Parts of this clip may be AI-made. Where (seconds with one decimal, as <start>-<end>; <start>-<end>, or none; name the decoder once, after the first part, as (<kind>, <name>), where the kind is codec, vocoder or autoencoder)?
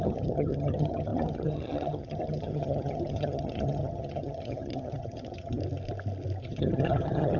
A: 0.0-5.6 (vocoder, HiFi-GAN); 6.4-7.4